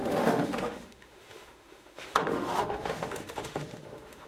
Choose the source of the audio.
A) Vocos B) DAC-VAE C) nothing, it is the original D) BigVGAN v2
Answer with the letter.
B